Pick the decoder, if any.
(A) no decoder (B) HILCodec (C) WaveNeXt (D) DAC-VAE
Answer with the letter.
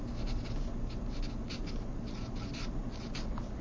A